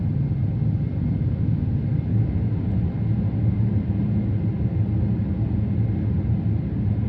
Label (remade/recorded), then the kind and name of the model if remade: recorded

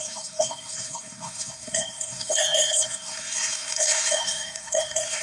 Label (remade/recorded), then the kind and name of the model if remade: remade, codec, SNAC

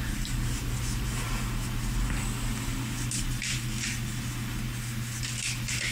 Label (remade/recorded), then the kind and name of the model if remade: remade, vocoder, BigVGAN v2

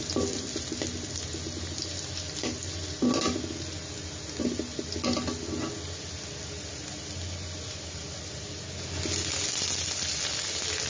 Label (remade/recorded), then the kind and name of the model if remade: recorded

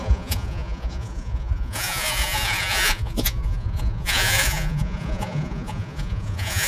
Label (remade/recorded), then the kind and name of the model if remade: remade, vocoder, Vocos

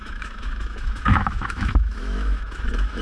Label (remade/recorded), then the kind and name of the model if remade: remade, autoencoder, DAC-VAE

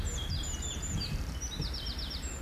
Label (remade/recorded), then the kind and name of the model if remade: remade, vocoder, BigVGAN v2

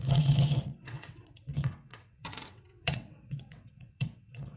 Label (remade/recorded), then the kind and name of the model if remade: remade, vocoder, WaveNeXt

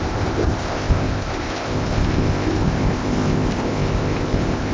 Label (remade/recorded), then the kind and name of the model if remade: remade, codec, ZipCodec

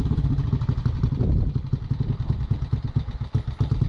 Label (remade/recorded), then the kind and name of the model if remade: recorded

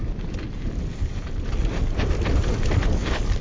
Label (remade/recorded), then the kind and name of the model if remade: recorded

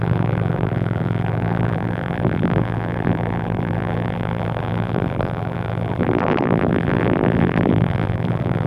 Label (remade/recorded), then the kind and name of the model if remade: remade, vocoder, BigVGAN v2